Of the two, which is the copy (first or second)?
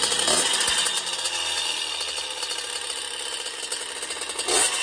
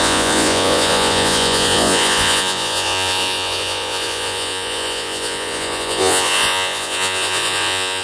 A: second